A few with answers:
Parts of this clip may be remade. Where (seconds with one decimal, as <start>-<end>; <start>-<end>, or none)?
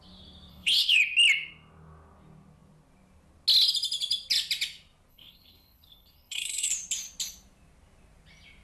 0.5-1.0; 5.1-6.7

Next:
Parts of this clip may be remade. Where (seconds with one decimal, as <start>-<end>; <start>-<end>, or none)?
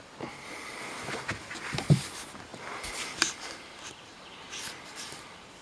none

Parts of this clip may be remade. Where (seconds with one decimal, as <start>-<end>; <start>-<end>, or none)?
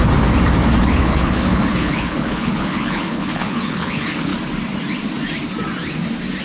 0.8-4.3